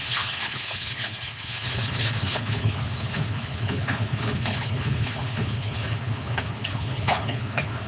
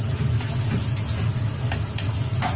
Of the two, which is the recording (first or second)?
second